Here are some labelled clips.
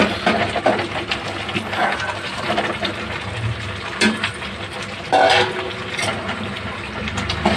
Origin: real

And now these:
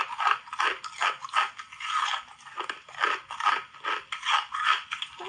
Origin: real